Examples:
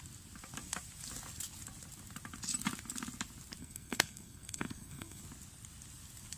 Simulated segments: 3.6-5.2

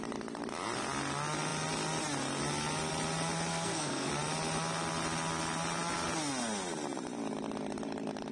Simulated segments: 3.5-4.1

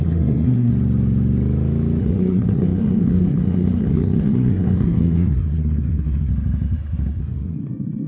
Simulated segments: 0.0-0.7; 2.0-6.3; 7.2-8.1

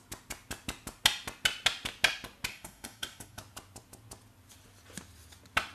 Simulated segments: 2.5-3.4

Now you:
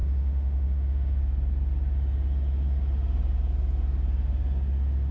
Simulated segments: 0.0-1.2

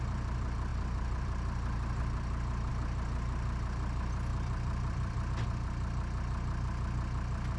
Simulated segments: 0.7-2.7; 4.3-5.3

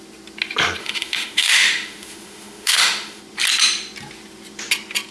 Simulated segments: 0.8-3.2